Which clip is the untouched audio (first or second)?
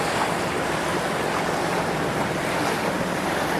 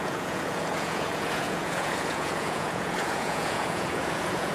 first